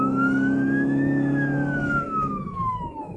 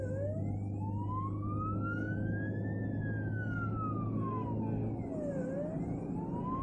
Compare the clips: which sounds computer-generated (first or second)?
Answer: first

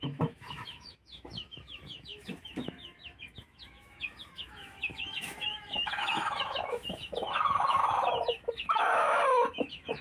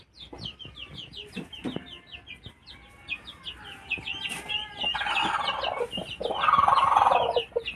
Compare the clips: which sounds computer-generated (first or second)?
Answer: first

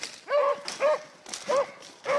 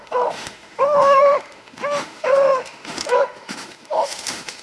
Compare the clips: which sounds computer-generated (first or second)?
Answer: second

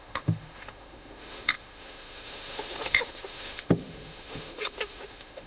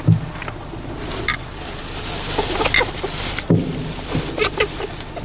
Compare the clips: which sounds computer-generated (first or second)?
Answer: first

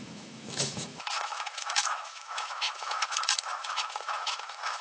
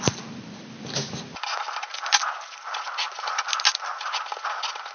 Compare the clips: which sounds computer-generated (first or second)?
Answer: first